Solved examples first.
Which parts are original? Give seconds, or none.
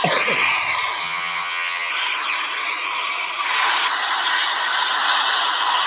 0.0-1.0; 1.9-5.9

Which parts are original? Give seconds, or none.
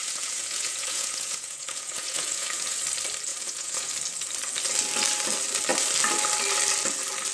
2.8-3.3; 3.9-7.3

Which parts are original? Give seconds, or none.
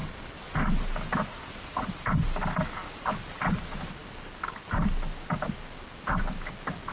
0.0-4.0; 4.7-6.9